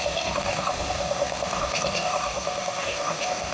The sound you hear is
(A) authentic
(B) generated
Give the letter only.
B